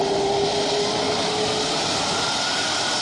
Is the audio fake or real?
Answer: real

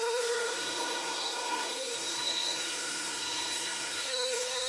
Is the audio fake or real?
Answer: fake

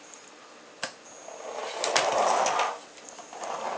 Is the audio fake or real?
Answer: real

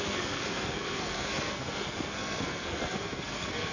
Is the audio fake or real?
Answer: fake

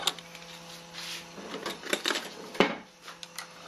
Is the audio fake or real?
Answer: real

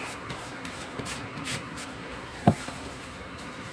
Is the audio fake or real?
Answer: fake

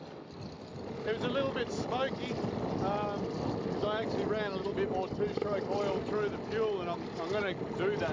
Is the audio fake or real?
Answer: real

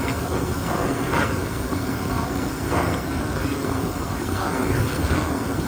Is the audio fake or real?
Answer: fake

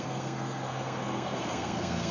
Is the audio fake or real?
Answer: fake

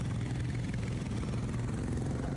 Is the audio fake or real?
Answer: real